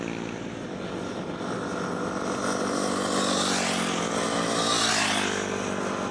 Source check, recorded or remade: recorded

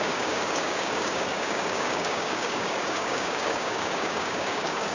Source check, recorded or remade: remade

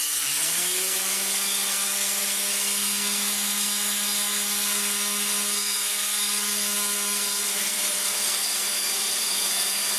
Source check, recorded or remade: remade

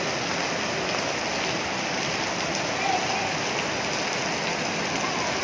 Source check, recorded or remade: recorded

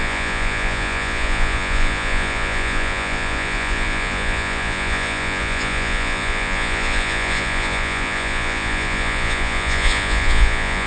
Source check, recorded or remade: remade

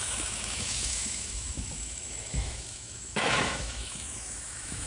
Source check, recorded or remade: remade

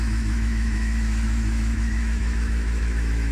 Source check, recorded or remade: remade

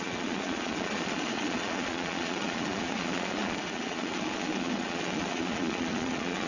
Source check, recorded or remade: remade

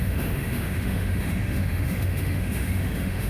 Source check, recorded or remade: remade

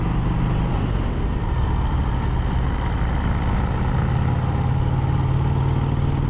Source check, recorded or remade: recorded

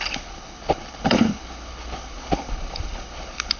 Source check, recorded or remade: remade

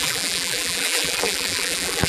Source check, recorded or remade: remade